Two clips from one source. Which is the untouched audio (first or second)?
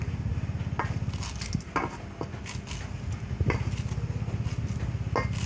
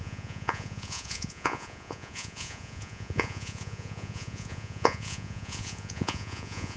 first